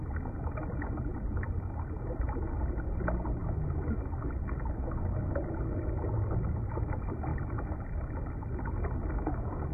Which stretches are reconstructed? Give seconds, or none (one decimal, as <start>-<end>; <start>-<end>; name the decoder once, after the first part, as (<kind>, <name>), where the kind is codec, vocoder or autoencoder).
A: none